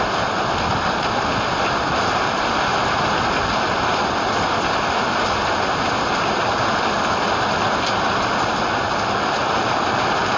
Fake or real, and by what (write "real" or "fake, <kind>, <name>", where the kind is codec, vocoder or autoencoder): real